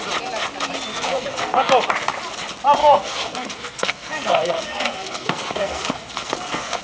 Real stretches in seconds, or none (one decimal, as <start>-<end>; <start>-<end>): 0.0-0.9; 1.7-2.8